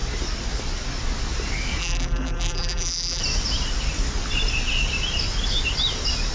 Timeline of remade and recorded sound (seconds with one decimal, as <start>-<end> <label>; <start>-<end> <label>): 0.0-1.8 recorded; 1.8-3.2 remade; 3.2-6.3 recorded